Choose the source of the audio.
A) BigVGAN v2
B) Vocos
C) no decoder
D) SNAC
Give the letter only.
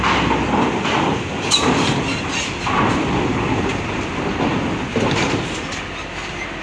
C